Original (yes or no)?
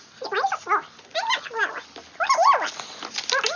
yes